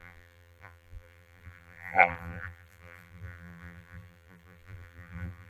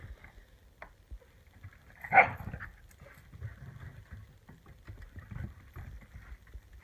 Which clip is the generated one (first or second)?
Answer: first